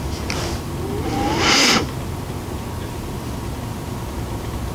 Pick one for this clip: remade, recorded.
recorded